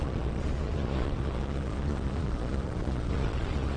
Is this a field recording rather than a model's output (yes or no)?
no